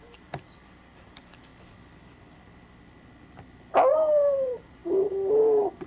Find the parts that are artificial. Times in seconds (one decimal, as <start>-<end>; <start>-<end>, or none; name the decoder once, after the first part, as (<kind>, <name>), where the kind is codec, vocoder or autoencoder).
0.0-1.5 (vocoder, BigVGAN v2); 3.9-5.9